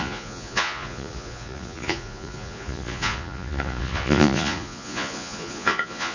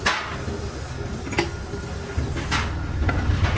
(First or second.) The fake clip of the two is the first